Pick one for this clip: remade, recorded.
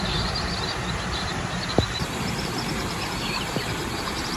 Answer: remade